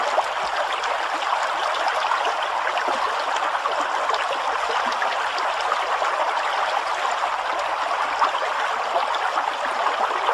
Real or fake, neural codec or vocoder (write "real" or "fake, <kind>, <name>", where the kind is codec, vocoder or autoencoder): real